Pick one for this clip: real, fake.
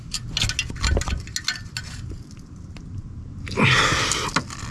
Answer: real